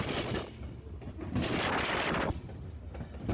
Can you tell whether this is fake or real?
real